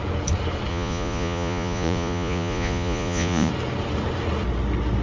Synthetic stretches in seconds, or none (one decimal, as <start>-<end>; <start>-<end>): 0.7-3.5